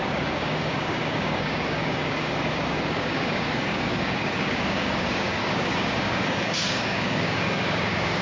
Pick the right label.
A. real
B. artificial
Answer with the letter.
B